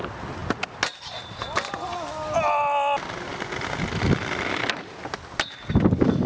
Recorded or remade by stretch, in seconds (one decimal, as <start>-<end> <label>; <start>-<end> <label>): 0.0-6.3 recorded